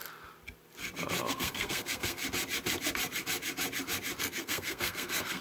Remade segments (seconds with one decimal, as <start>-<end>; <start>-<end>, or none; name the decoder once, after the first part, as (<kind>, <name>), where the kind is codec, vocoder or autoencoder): 1.3-2.2 (codec, SNAC); 4.2-5.4